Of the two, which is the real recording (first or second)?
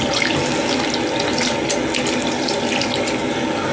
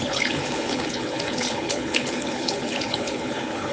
first